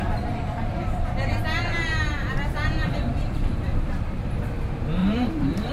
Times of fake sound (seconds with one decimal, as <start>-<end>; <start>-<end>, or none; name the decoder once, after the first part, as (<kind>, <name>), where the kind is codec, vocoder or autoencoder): 2.8-4.2 (vocoder, BigVGAN v2); 5.0-5.7